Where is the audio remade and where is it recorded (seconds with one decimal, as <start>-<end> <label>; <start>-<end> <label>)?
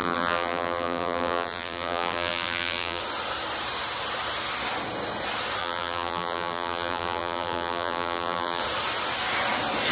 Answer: 0.0-3.0 remade; 3.0-5.6 recorded; 5.6-8.6 remade; 8.6-9.9 recorded